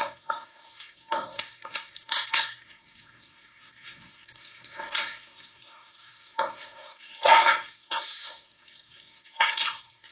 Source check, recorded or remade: remade